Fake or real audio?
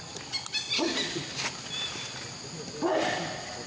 real